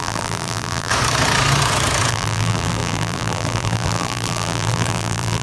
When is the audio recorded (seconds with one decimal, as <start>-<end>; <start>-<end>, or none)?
0.9-2.1